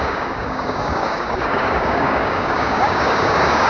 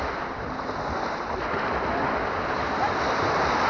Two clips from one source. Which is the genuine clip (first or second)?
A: second